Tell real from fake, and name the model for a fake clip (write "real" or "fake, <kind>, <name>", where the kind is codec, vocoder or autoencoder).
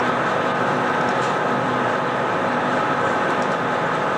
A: real